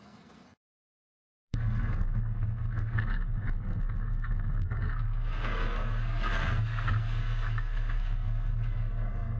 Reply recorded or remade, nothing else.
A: remade